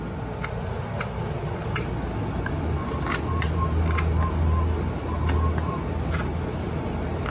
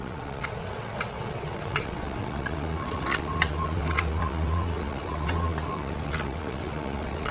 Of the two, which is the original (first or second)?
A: first